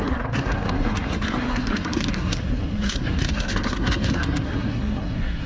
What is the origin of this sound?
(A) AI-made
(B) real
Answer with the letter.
A